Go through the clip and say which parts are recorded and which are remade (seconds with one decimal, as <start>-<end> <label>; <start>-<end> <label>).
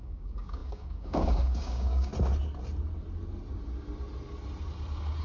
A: 0.0-2.1 remade; 2.1-5.2 recorded